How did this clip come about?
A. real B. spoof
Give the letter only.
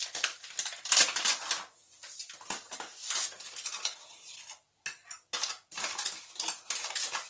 A